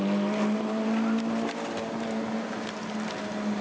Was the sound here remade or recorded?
recorded